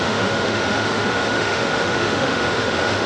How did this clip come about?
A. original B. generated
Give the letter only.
B